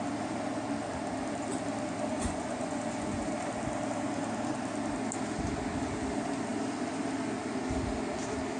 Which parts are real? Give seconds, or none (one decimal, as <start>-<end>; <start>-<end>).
0.0-2.1; 3.3-8.6